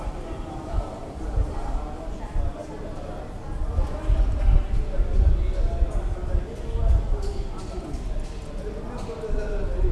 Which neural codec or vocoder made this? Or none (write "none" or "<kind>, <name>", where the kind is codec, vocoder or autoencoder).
none